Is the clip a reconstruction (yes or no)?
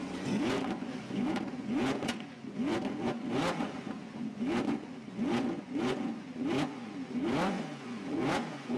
yes